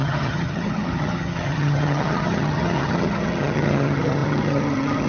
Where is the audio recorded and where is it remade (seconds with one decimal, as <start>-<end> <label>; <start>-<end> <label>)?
0.0-5.1 remade